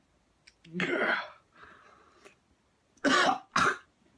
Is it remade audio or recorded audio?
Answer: recorded